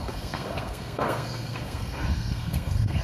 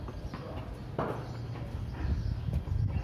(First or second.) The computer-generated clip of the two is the first